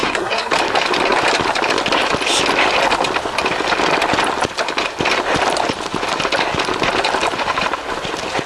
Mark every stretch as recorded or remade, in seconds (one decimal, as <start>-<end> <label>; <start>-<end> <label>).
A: 0.0-0.5 remade; 0.5-8.5 recorded